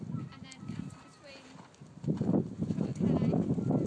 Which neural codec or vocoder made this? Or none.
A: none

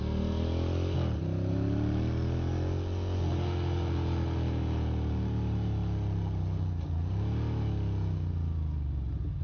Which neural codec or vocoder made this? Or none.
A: none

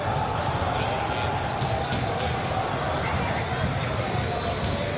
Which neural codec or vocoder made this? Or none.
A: none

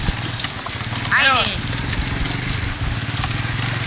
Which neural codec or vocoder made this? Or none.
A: none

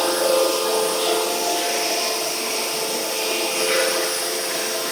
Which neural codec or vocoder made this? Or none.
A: none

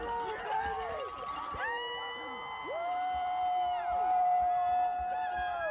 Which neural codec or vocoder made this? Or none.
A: none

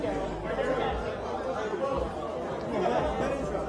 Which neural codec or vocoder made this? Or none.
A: none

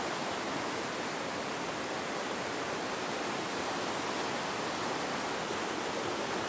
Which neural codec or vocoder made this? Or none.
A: none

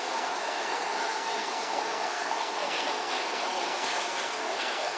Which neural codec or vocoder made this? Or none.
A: codec, SNAC